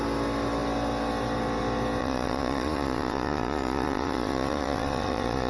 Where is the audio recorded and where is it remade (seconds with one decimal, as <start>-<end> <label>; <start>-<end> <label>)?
0.0-2.0 recorded; 2.0-5.5 remade

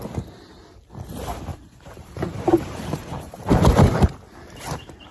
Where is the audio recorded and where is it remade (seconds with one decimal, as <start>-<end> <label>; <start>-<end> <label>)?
0.0-1.5 recorded; 1.5-3.6 remade; 3.6-5.1 recorded

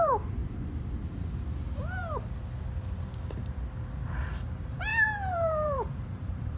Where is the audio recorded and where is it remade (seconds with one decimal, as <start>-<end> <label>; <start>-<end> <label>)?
0.0-0.4 remade; 0.4-4.4 recorded; 4.4-6.6 remade

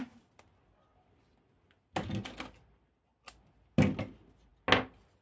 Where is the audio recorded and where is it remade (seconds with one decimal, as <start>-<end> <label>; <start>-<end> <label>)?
0.0-5.2 recorded